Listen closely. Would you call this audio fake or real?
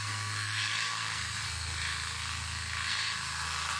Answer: fake